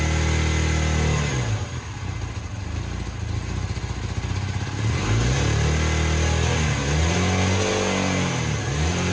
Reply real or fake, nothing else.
real